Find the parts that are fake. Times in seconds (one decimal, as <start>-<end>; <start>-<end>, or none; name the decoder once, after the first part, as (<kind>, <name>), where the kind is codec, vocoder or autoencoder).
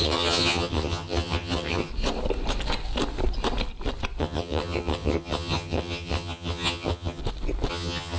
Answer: 0.0-1.9 (vocoder, HiFi-GAN); 4.2-7.2; 7.7-8.2